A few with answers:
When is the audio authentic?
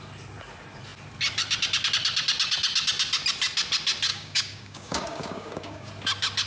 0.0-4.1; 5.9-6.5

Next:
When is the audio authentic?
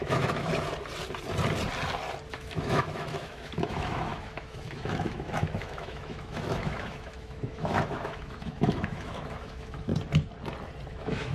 0.5-2.3; 9.9-10.9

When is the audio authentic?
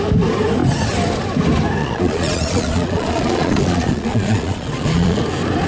0.0-1.8; 5.2-5.7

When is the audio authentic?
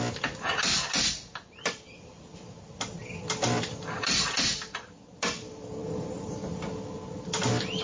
0.0-5.8; 6.4-7.8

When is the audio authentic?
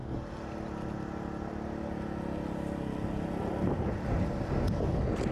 0.0-5.3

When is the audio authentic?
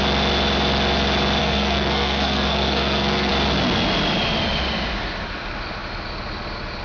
0.0-1.4; 3.3-6.8